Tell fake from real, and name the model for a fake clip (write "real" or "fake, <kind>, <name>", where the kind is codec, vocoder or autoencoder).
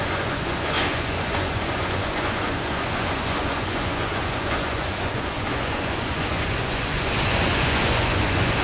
fake, vocoder, Vocos